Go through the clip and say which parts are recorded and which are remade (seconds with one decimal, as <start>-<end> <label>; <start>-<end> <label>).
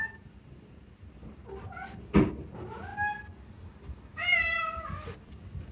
0.0-4.1 recorded; 4.1-4.7 remade; 4.7-5.7 recorded